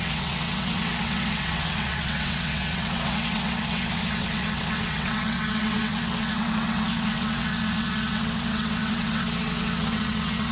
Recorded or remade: remade